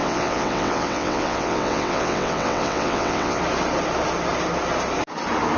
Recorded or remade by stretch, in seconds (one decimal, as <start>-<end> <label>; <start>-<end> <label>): 0.0-3.4 remade; 3.4-5.6 recorded

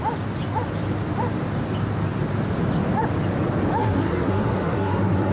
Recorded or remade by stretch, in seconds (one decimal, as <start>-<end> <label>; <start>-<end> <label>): 0.0-3.8 recorded; 3.8-5.3 remade

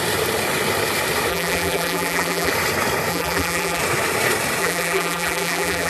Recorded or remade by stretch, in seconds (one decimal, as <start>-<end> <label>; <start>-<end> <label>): 0.0-1.3 recorded; 1.3-2.5 remade; 2.5-3.1 recorded; 3.1-3.8 remade; 3.8-4.6 recorded; 4.6-5.9 remade